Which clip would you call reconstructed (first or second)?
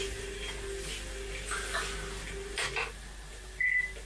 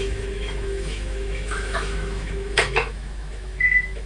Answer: second